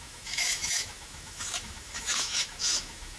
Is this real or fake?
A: fake